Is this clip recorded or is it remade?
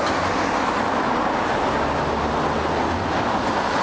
recorded